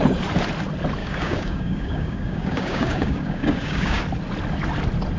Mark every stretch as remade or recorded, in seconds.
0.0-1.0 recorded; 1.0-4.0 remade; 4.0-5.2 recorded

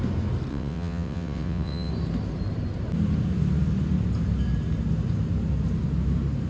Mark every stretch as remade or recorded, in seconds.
0.0-0.5 recorded; 0.5-1.9 remade; 1.9-6.5 recorded

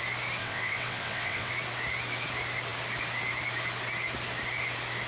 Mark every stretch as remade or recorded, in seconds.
0.0-0.4 recorded; 0.4-1.5 remade; 1.5-5.1 recorded